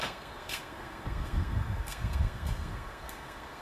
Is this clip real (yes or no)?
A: no